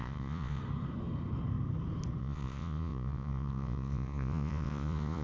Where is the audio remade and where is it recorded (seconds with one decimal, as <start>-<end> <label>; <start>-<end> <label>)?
0.0-0.6 remade; 0.6-2.2 recorded; 2.2-5.2 remade